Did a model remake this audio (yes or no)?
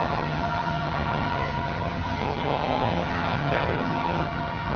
yes